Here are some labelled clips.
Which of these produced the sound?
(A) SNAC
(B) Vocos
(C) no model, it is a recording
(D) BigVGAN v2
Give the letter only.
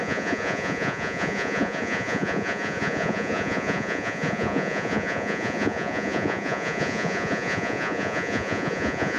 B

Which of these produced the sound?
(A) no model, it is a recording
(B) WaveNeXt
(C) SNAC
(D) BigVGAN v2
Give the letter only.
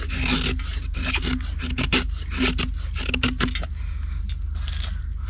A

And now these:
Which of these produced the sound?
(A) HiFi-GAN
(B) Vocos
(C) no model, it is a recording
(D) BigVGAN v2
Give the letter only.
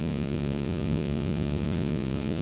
B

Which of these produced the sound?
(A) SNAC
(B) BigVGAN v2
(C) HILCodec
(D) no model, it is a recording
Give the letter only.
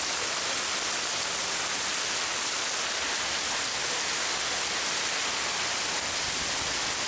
D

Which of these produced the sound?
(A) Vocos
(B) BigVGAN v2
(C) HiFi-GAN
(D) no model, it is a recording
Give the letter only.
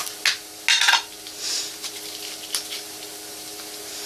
D